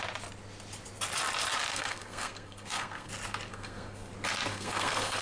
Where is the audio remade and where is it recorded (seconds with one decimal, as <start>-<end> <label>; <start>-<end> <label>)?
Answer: 0.0-1.7 recorded; 1.7-3.1 remade; 3.1-3.5 recorded; 3.5-4.1 remade; 4.1-4.5 recorded; 4.5-5.2 remade